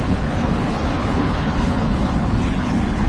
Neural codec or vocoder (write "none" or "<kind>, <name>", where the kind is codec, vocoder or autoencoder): codec, HILCodec